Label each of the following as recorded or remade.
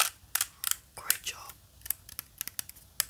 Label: recorded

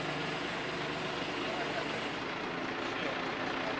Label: recorded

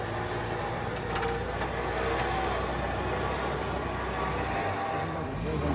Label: recorded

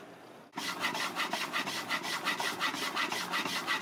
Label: recorded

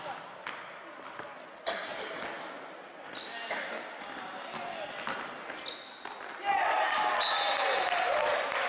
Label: recorded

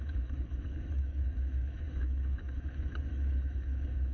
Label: remade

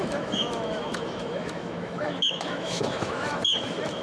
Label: remade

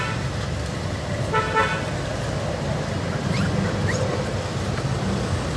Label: recorded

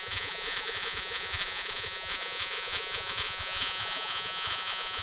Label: remade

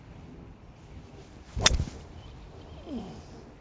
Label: recorded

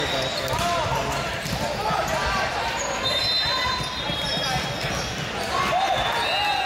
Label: recorded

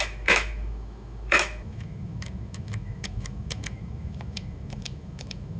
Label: remade